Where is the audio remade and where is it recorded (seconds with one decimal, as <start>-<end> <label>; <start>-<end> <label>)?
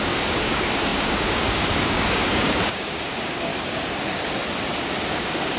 0.0-3.5 remade; 3.5-5.1 recorded; 5.1-5.6 remade